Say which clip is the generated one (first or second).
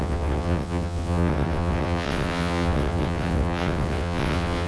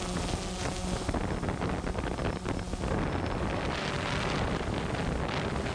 first